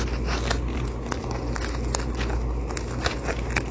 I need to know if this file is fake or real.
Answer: real